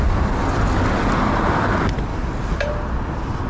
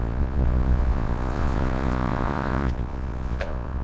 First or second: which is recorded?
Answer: first